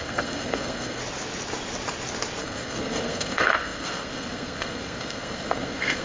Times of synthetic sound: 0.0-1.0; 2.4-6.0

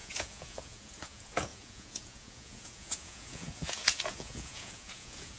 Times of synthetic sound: 0.0-5.4